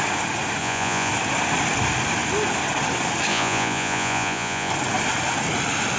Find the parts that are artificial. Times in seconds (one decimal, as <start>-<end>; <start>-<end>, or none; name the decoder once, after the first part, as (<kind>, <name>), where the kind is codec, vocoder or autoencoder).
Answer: 0.6-1.1 (vocoder, Vocos); 3.3-4.7